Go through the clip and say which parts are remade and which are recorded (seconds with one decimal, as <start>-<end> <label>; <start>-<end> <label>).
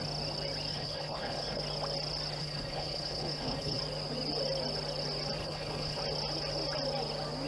0.0-0.7 recorded; 0.7-1.6 remade; 1.6-2.4 recorded; 2.4-3.8 remade; 3.8-5.4 recorded; 5.4-6.0 remade; 6.0-7.5 recorded